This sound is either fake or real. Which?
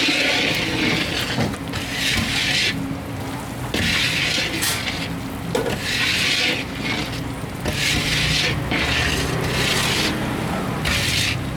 real